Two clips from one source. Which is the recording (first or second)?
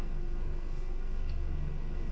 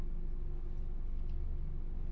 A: second